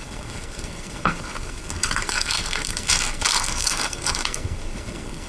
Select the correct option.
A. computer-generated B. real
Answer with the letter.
A